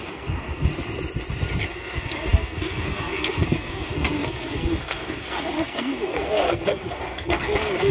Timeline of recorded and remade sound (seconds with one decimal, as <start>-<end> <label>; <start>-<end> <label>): 0.0-0.7 remade; 0.7-1.7 recorded; 1.7-7.9 remade